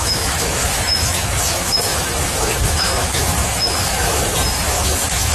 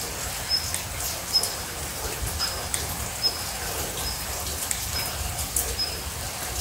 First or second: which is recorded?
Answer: second